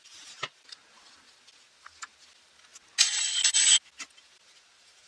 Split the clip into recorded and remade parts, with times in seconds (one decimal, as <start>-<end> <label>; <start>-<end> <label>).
0.0-5.1 recorded